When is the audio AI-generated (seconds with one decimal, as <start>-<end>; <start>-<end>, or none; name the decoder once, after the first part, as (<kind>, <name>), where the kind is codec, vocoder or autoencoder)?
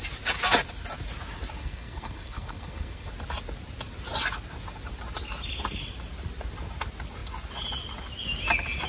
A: 1.6-3.1 (codec, SNAC)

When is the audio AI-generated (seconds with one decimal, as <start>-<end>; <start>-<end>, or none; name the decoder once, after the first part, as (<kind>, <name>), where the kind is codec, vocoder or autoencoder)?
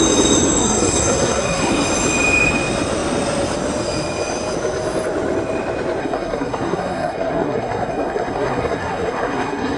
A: 0.6-1.7 (codec, SNAC); 6.0-9.8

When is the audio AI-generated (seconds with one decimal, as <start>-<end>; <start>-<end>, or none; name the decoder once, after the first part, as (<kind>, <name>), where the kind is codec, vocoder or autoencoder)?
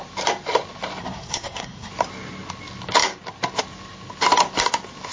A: 1.0-1.9 (codec, SNAC)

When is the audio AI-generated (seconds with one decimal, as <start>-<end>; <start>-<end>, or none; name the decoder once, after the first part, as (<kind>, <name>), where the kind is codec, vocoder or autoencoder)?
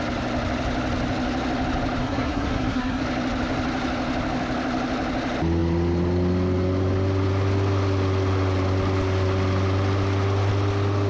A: 2.0-3.0 (codec, SNAC)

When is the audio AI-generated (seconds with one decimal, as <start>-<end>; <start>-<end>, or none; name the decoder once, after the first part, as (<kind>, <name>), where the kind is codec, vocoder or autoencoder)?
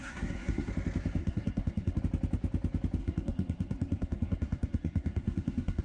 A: 0.0-0.7 (codec, SNAC); 1.2-2.0; 3.0-5.8